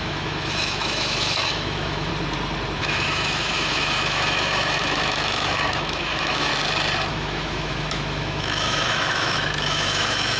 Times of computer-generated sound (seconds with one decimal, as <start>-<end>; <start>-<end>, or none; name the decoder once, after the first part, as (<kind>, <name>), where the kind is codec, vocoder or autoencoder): 0.0-2.1 (autoencoder, DAC-VAE); 2.8-6.5; 7.1-10.4